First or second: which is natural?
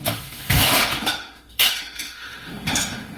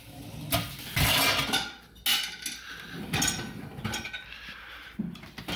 second